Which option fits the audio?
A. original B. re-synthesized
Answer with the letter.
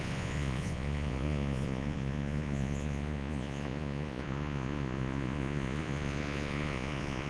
B